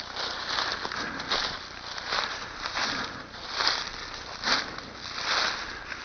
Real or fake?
real